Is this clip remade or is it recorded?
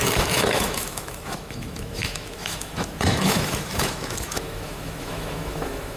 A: remade